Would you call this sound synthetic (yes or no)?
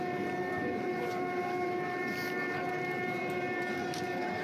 yes